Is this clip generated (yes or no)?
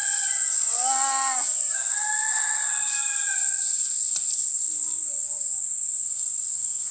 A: no